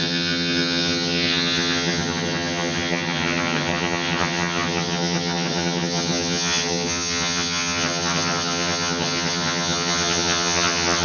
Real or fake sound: fake